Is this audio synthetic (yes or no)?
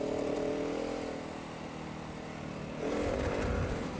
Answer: no